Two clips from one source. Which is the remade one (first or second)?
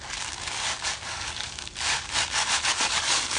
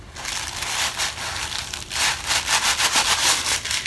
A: first